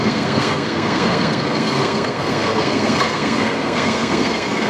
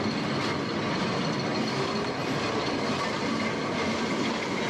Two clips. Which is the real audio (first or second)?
second